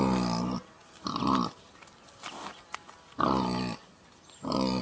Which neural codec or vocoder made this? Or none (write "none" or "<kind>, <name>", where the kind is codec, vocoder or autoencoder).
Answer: none